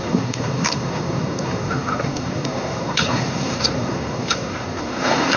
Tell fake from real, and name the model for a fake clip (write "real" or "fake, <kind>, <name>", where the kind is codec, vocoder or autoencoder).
fake, codec, SNAC